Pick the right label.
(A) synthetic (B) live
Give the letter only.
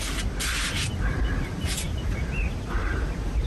B